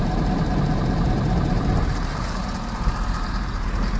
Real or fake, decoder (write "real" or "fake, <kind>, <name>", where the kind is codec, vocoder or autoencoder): fake, vocoder, BigVGAN v2